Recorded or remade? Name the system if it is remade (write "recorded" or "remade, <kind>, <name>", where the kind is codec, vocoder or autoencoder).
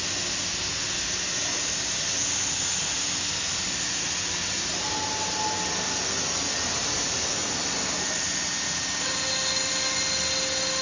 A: recorded